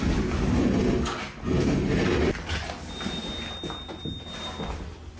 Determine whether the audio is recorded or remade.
recorded